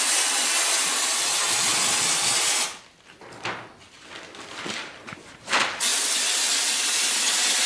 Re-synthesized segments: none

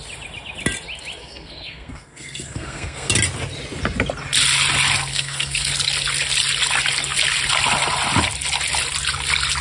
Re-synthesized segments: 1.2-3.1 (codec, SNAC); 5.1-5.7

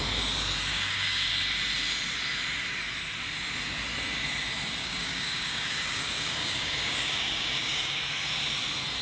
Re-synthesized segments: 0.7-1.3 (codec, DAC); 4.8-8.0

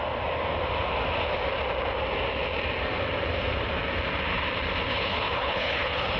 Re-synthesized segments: 4.9-6.2 (codec, HILCodec)

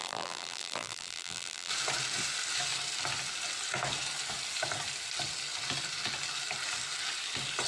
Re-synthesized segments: 0.0-1.7 (vocoder, BigVGAN v2)

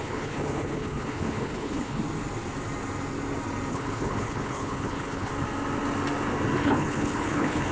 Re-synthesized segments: 0.0-2.0 (codec, HILCodec); 3.7-5.3; 6.6-7.7

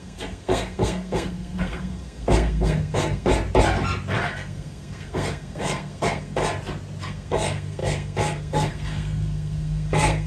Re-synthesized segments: 0.0-3.3 (codec, SNAC); 4.1-6.4; 7.0-10.3